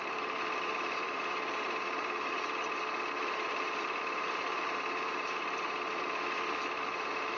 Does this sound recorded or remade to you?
remade